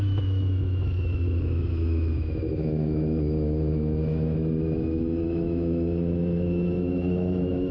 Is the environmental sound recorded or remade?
remade